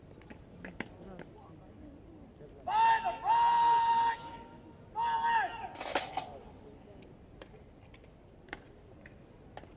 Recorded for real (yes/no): yes